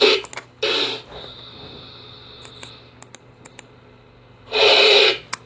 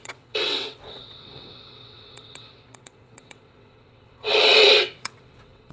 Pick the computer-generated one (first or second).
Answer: second